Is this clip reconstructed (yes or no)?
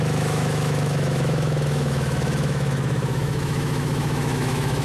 yes